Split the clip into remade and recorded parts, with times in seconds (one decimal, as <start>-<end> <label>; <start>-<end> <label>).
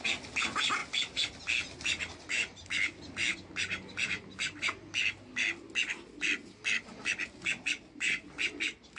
0.0-9.0 recorded